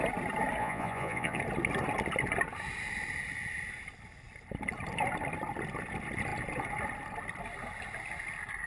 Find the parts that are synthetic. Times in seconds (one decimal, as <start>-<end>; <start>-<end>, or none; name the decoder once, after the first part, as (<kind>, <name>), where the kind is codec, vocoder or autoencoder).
0.6-1.4 (vocoder, Vocos)